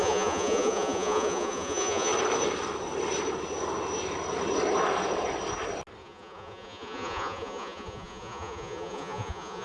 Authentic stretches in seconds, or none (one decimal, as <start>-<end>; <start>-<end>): 2.1-6.0

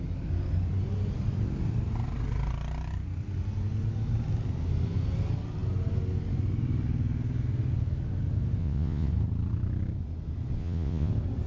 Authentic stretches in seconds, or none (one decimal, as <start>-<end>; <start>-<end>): 0.0-8.6; 9.1-10.6; 11.1-11.5

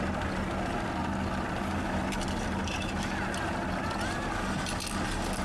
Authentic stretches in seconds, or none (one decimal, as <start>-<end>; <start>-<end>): 0.0-5.4